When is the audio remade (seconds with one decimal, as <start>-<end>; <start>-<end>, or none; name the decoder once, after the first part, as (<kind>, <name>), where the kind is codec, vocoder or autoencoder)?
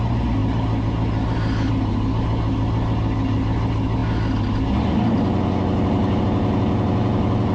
none